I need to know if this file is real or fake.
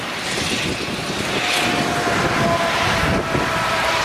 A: real